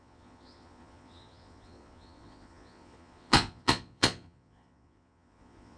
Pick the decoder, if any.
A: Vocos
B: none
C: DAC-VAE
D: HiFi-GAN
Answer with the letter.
A